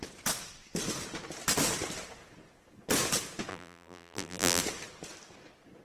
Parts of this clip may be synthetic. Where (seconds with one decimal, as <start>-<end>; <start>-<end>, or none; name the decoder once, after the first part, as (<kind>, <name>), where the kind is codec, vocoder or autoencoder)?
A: 3.5-4.6 (vocoder, BigVGAN v2)